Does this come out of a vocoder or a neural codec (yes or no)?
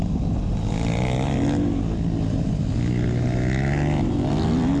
no